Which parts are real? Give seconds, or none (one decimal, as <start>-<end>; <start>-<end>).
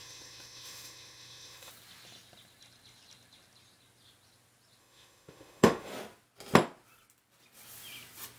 1.7-4.8; 5.9-8.4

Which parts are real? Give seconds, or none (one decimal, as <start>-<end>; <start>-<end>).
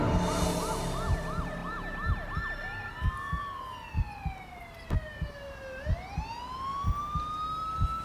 0.0-8.0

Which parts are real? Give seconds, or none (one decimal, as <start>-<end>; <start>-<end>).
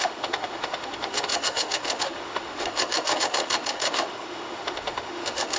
none